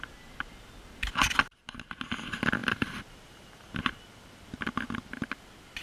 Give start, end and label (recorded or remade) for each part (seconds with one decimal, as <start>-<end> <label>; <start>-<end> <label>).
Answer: 0.0-2.6 recorded; 2.6-4.5 remade; 4.5-5.8 recorded